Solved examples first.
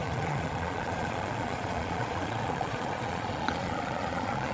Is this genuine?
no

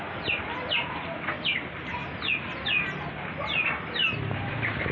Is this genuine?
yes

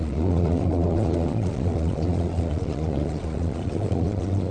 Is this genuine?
no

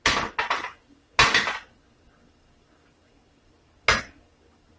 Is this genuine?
yes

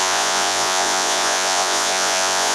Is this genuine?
no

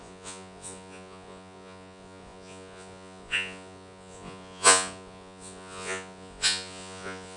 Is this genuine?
no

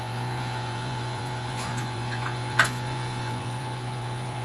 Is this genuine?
no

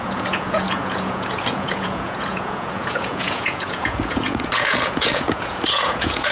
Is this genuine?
no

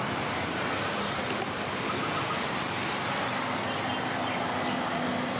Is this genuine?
yes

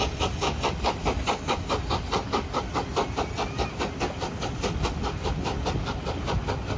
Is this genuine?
yes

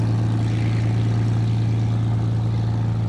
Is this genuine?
yes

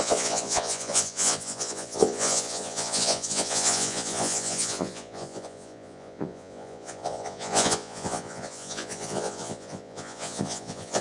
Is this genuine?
no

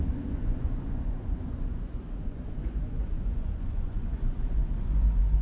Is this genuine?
no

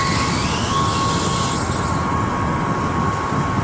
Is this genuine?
yes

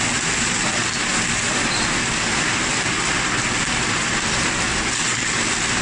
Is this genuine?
yes